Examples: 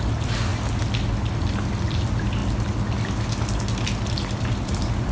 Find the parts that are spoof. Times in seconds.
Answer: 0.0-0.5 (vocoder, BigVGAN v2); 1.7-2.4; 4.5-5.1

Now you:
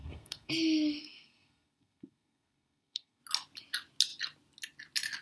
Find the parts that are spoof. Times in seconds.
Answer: 0.0-0.5 (codec, SNAC); 1.0-3.2

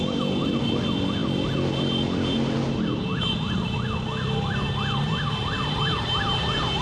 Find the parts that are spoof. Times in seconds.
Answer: none

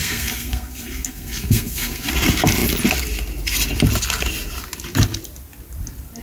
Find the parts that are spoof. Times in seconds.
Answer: 0.0-2.1 (codec, SNAC)

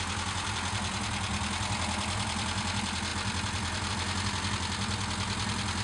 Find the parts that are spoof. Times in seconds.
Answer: none